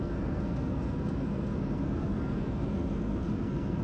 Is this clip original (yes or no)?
no